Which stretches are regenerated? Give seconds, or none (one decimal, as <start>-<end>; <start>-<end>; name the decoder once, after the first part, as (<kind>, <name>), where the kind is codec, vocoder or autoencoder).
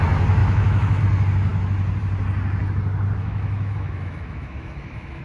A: 0.4-1.0 (autoencoder, DAC-VAE); 3.2-5.2